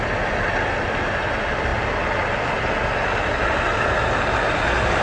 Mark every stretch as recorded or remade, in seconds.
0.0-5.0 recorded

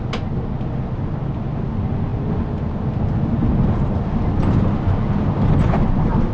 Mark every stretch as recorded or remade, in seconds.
0.0-6.3 recorded